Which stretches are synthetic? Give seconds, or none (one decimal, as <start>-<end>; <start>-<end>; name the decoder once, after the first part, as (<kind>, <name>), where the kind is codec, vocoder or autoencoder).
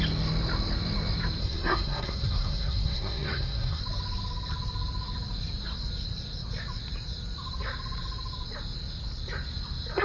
1.4-3.8 (codec, SNAC)